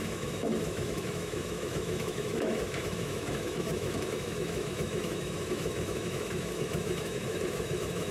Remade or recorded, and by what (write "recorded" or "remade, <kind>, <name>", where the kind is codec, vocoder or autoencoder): remade, autoencoder, DAC-VAE